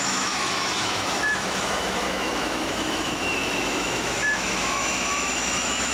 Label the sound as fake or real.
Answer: fake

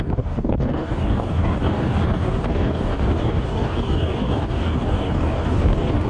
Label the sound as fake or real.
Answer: fake